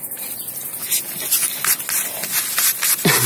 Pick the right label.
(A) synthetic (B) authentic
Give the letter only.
B